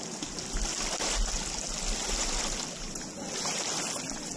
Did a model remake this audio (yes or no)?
no